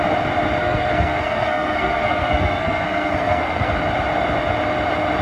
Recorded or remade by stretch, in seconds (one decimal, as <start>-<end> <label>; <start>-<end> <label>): 0.0-0.6 recorded; 0.6-3.7 remade; 3.7-5.2 recorded